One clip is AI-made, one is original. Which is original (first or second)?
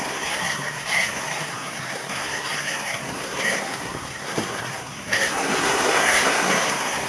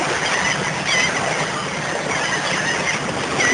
second